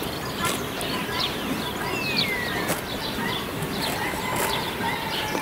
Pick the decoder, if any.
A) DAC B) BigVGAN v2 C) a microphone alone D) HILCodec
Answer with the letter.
C